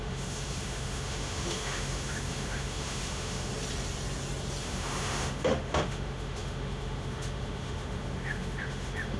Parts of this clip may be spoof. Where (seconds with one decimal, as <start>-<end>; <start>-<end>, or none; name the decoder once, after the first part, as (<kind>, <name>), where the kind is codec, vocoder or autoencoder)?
0.0-3.5 (autoencoder, DAC-VAE); 4.6-9.2